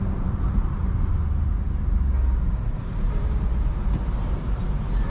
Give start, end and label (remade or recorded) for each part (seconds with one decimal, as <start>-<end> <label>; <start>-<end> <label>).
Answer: 0.0-0.8 remade; 0.8-2.6 recorded; 2.6-5.1 remade